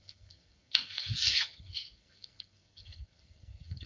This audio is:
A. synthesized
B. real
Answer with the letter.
A